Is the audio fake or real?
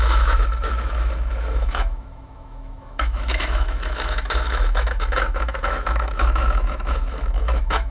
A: fake